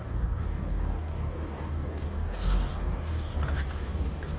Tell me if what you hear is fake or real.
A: fake